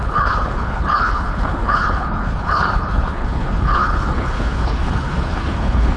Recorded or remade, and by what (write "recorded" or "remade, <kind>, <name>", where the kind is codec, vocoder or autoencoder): remade, codec, HILCodec